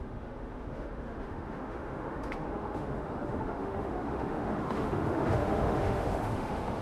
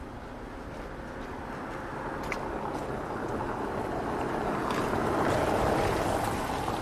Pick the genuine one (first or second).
second